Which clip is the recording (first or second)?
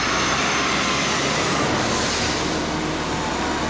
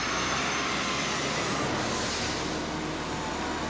second